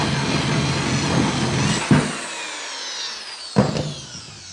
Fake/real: real